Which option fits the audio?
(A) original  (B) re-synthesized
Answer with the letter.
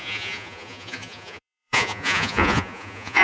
B